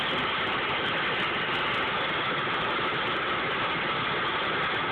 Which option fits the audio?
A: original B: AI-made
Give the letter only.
A